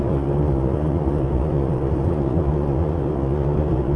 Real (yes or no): no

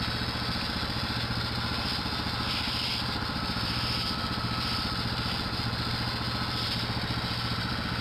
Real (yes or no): yes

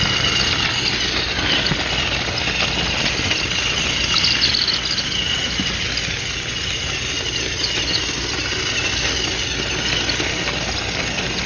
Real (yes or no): yes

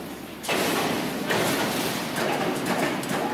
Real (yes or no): yes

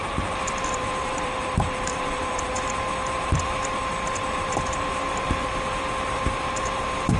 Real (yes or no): no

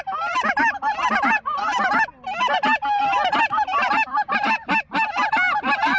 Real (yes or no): yes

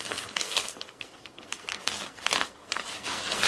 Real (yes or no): no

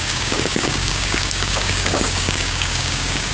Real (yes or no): no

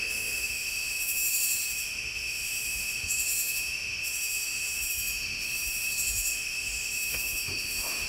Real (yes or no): no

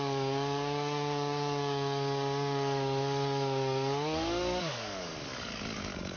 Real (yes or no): no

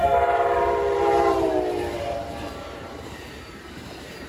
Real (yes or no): no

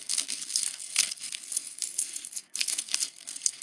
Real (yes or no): no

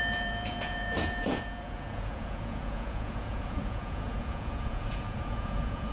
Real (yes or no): no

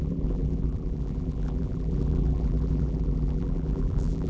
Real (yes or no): no